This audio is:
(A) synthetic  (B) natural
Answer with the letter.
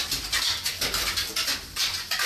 B